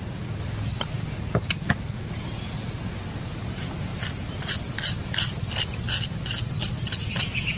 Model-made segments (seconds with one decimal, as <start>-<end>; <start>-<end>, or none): none